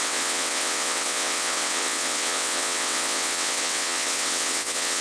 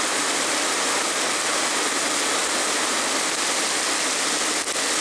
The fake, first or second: first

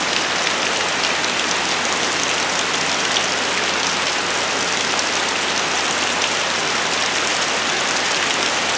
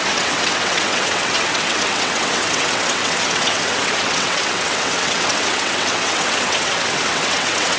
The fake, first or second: second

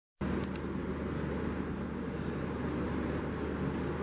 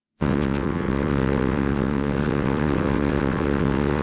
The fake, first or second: second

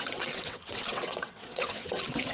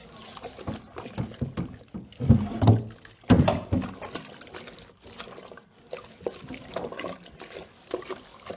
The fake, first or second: first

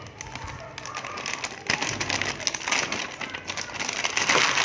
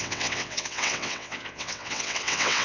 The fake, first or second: second